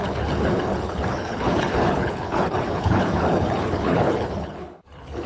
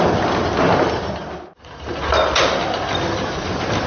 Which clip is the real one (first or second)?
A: second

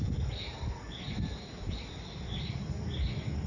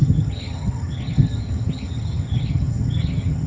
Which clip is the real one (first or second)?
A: first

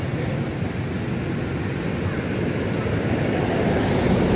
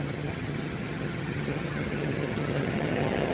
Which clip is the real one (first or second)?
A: first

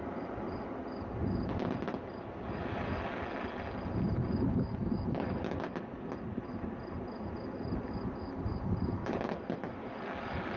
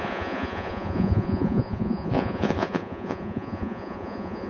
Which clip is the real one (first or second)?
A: first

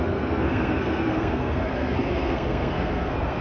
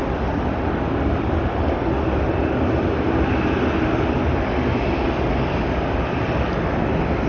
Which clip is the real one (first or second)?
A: second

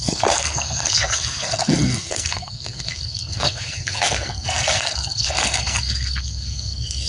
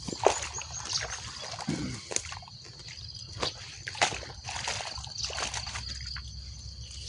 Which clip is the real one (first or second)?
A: second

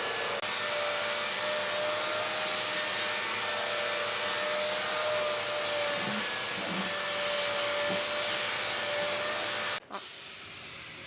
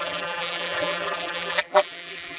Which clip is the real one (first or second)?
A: first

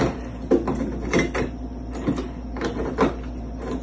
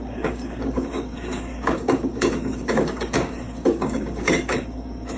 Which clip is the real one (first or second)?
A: first